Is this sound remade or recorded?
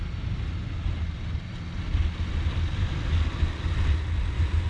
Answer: recorded